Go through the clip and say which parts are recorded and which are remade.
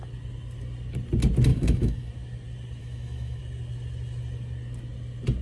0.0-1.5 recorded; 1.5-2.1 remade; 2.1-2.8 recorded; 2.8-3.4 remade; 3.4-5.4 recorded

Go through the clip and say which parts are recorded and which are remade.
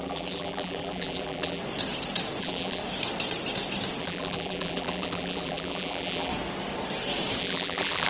0.0-1.6 remade; 1.6-2.4 recorded; 2.4-2.8 remade; 2.8-4.0 recorded; 4.0-6.3 remade; 6.3-7.4 recorded; 7.4-8.1 remade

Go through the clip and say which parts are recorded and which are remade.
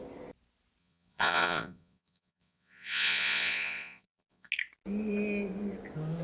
0.0-0.8 recorded; 0.8-4.5 remade; 4.5-6.2 recorded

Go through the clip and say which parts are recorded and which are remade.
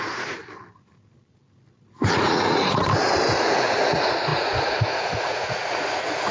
0.0-0.4 remade; 0.4-2.1 recorded; 2.1-2.8 remade; 2.8-3.4 recorded; 3.4-6.3 remade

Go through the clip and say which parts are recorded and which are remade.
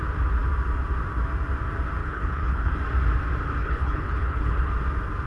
0.0-2.0 recorded; 2.0-2.8 remade; 2.8-3.6 recorded; 3.6-4.7 remade; 4.7-5.3 recorded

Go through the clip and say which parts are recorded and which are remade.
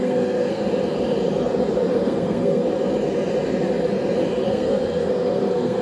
0.0-0.6 remade; 0.6-1.9 recorded; 1.9-2.6 remade; 2.6-4.5 recorded; 4.5-5.8 remade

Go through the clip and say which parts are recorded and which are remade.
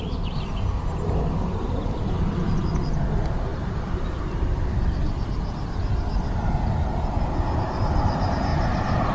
0.0-9.1 recorded